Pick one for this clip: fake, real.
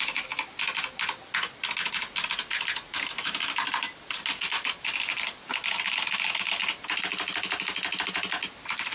real